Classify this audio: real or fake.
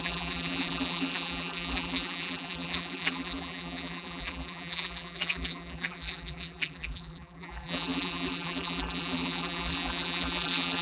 fake